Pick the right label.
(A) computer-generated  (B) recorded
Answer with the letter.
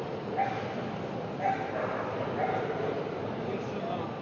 B